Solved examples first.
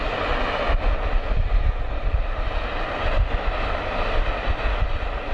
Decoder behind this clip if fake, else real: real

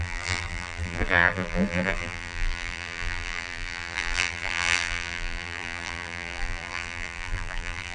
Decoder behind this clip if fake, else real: fake, vocoder, BigVGAN v2